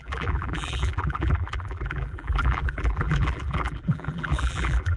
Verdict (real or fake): fake